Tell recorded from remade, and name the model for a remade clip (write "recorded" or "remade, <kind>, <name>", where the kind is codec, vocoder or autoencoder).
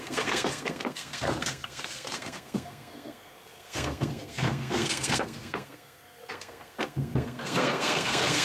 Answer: remade, codec, SNAC